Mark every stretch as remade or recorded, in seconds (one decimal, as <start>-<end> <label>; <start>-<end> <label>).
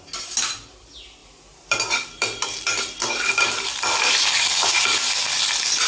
0.0-5.9 recorded